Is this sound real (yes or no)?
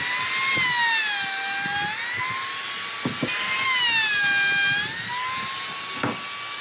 yes